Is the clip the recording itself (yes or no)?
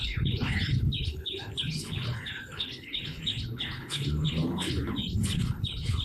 no